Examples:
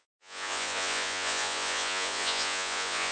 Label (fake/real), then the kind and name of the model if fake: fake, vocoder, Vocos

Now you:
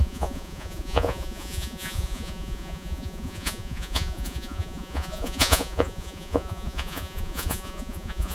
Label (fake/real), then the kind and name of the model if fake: fake, vocoder, Vocos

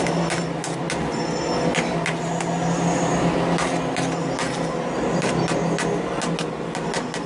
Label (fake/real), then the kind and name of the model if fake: real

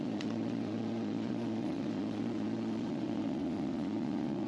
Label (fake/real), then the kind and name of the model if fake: fake, vocoder, Vocos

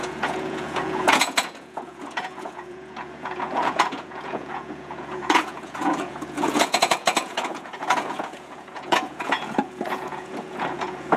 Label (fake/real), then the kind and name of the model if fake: fake, vocoder, Vocos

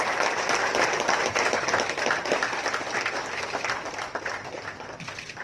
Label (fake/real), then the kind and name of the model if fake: real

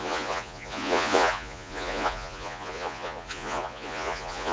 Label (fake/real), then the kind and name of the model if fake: fake, vocoder, Vocos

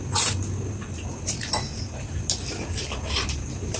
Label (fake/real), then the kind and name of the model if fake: real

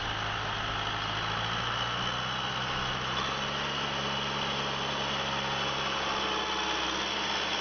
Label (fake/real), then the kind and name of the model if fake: real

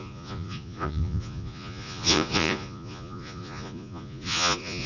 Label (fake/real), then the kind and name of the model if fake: fake, vocoder, Vocos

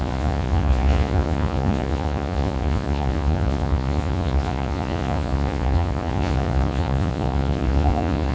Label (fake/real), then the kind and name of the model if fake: fake, vocoder, Vocos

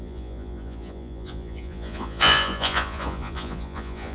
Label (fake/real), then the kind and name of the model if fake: fake, vocoder, Vocos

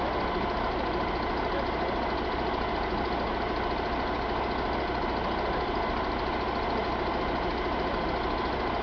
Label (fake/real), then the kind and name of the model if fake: real